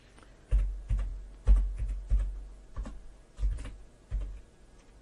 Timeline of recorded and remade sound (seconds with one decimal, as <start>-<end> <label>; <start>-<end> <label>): 0.0-5.0 recorded